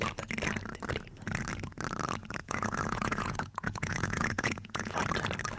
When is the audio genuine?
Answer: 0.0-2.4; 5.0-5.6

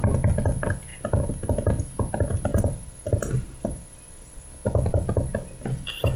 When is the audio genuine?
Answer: 0.0-2.5; 4.4-6.2